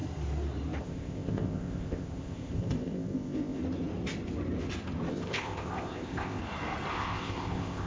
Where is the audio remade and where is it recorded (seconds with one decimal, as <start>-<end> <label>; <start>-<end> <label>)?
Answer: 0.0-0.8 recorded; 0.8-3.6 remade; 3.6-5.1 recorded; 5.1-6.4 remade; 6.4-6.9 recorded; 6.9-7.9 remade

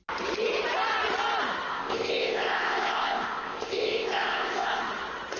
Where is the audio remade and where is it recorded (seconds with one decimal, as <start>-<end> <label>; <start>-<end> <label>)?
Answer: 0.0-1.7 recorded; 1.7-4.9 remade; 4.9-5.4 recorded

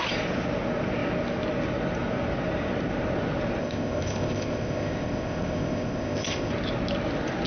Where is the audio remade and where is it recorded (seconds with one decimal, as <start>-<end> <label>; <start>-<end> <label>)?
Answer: 0.0-3.6 recorded; 3.6-6.5 remade; 6.5-7.5 recorded

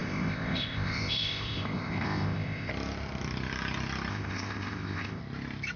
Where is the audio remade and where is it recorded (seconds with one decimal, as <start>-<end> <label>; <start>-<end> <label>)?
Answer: 0.0-2.7 remade; 2.7-4.1 recorded; 4.1-5.2 remade; 5.2-5.8 recorded

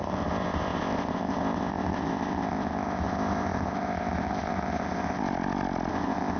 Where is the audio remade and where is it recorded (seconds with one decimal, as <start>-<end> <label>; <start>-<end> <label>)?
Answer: 0.0-5.2 remade; 5.2-5.9 recorded; 5.9-6.4 remade